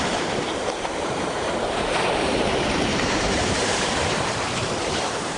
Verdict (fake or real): fake